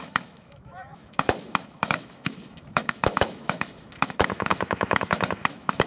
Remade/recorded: remade